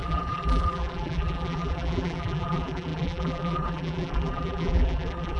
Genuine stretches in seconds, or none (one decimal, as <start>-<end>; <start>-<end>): none